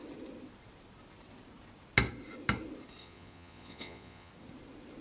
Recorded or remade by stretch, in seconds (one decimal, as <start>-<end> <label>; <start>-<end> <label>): 0.0-3.0 recorded; 3.0-4.3 remade; 4.3-5.0 recorded